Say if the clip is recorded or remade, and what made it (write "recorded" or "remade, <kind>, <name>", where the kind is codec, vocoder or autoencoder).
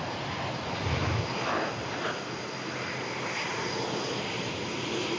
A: recorded